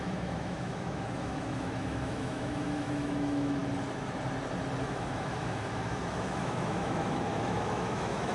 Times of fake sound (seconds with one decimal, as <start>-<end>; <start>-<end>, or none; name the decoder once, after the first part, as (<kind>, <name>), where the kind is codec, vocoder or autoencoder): 0.0-3.6 (autoencoder, DAC-VAE); 4.8-8.3

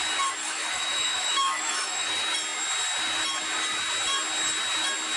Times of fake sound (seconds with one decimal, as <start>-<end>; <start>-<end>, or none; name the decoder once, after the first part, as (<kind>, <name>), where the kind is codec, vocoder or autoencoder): 0.4-2.1 (autoencoder, DAC-VAE)

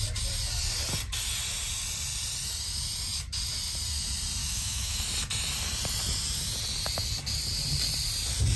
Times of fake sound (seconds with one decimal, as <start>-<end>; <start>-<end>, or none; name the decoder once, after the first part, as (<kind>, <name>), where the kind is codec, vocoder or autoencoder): 4.4-5.0 (autoencoder, DAC-VAE)